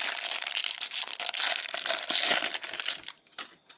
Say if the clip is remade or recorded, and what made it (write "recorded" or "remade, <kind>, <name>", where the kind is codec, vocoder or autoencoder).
recorded